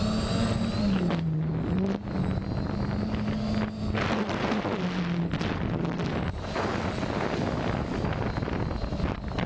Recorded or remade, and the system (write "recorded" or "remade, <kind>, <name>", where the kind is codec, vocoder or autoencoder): recorded